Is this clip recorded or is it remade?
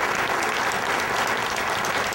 remade